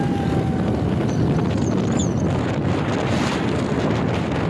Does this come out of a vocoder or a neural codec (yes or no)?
no